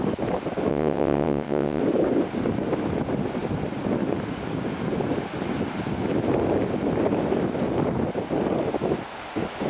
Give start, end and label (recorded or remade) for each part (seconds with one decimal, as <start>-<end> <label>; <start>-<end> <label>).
0.0-0.7 recorded; 0.7-1.8 remade; 1.8-9.7 recorded